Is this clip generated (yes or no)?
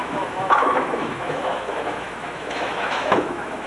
yes